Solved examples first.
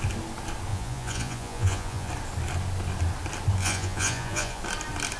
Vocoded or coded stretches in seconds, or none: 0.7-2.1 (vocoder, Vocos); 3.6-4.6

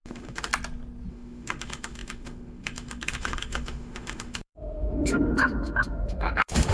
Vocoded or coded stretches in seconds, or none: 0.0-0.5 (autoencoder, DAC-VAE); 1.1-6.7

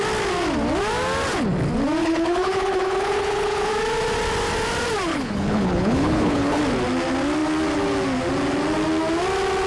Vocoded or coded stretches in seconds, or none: 2.0-3.7 (codec, HILCodec); 5.1-6.6